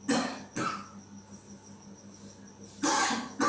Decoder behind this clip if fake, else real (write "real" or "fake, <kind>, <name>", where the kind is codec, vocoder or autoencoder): real